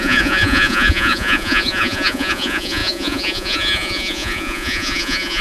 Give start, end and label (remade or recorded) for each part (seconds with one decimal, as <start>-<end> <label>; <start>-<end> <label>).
0.0-5.4 remade